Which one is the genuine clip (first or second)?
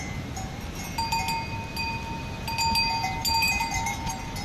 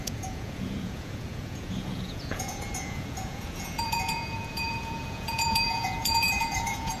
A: first